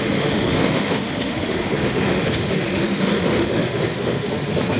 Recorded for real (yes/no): no